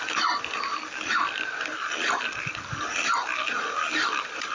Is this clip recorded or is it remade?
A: recorded